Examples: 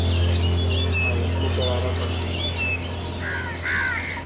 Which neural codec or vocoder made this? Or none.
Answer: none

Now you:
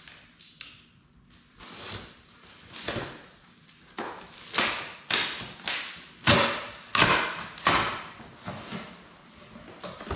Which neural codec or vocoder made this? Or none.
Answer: none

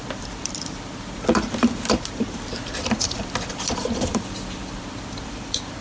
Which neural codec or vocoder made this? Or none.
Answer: vocoder, BigVGAN v2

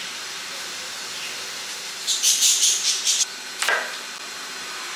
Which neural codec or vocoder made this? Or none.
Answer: vocoder, BigVGAN v2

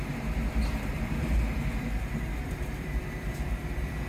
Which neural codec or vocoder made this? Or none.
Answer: vocoder, BigVGAN v2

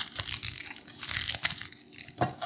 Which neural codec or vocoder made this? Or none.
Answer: none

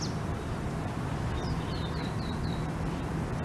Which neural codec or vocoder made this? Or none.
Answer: vocoder, BigVGAN v2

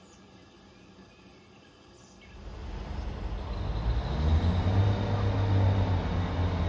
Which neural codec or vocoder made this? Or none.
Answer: none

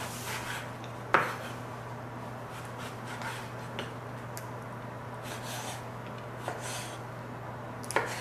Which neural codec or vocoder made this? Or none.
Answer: none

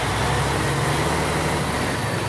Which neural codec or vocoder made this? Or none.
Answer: none